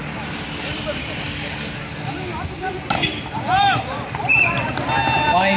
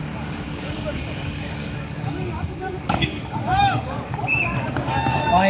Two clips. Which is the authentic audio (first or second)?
first